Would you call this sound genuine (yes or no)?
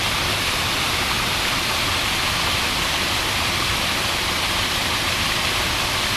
yes